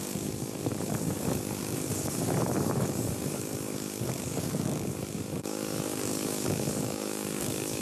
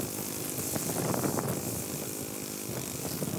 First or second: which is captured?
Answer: second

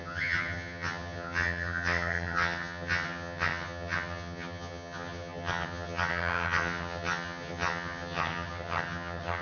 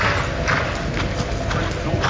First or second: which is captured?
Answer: second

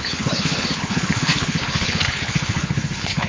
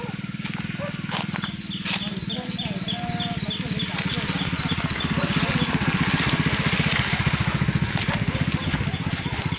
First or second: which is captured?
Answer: second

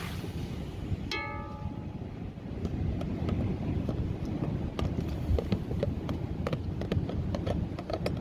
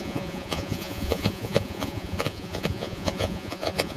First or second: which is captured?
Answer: first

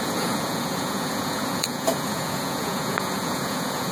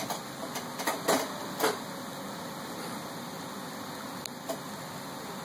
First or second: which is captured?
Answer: second